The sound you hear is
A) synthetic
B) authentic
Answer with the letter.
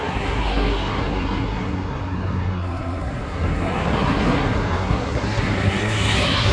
A